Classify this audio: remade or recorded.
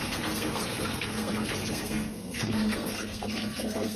remade